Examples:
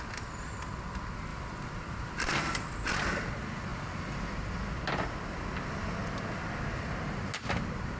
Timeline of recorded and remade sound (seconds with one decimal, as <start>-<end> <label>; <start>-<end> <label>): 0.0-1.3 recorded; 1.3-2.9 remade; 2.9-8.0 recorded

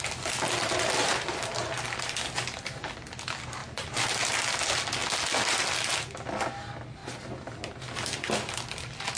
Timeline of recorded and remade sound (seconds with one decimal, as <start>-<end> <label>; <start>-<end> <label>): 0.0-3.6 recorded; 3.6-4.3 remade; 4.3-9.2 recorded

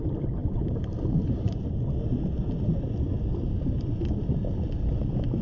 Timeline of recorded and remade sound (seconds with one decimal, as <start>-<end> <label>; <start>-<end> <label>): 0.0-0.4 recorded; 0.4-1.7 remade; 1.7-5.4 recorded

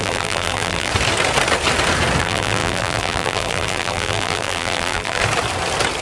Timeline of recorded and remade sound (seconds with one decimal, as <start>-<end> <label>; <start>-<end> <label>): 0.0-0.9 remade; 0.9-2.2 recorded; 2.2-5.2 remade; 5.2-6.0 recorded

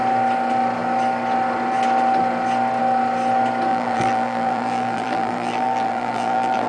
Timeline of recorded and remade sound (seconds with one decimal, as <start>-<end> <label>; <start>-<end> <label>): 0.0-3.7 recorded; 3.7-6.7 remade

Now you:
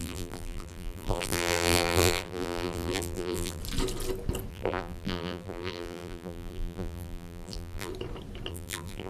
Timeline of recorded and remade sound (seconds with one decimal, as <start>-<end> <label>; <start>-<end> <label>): 0.0-3.6 remade; 3.6-4.5 recorded; 4.5-7.9 remade; 7.9-8.5 recorded; 8.5-9.1 remade